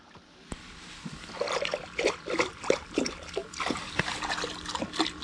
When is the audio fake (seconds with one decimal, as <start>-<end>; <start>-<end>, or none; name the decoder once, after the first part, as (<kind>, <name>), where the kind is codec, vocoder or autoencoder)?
none